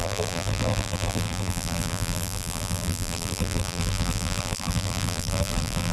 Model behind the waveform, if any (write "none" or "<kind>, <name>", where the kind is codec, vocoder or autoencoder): vocoder, BigVGAN v2